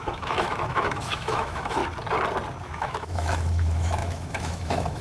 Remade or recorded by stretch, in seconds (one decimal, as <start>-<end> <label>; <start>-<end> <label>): 0.0-1.8 remade; 1.8-2.6 recorded; 2.6-5.0 remade